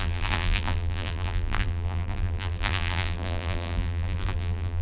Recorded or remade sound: remade